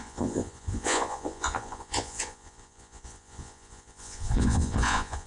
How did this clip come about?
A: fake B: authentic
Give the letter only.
A